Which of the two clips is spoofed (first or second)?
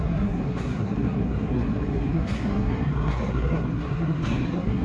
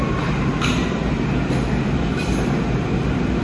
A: first